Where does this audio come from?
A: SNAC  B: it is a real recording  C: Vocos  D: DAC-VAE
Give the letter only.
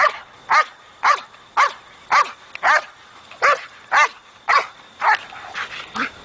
B